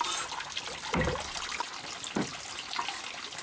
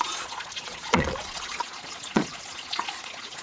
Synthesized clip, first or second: second